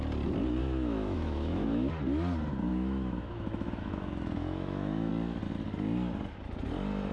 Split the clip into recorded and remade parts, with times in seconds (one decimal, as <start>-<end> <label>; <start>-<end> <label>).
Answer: 0.0-0.6 recorded; 0.6-1.9 remade; 1.9-2.7 recorded; 2.7-5.1 remade; 5.1-7.1 recorded